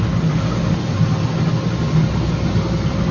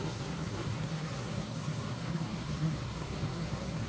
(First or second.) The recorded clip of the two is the first